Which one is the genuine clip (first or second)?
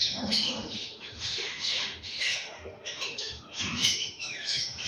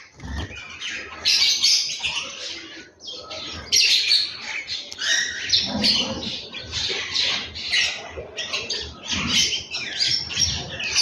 second